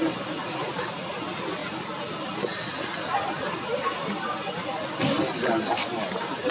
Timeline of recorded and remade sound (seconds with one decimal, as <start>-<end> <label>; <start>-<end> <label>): 0.0-0.8 remade; 0.8-6.5 recorded